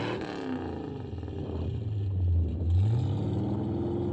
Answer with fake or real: real